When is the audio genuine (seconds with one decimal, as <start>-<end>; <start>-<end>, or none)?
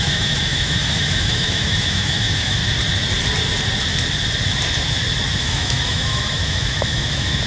2.6-5.4